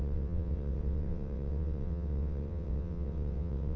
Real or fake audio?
fake